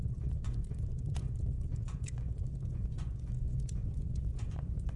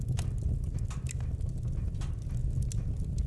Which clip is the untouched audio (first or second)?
second